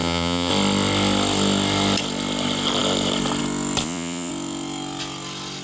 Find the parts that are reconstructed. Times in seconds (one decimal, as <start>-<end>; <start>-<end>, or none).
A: 0.0-0.5; 3.8-4.3